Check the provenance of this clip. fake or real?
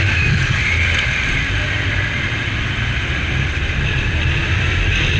fake